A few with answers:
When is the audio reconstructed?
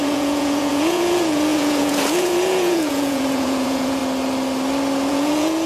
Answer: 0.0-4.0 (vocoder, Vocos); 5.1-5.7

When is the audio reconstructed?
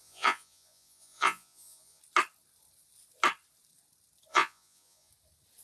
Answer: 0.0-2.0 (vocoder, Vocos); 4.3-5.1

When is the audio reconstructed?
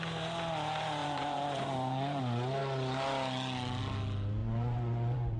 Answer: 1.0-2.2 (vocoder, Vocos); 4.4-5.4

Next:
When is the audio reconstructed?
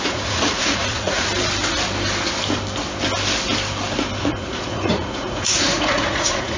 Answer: 0.0-1.3 (vocoder, Vocos); 4.2-6.6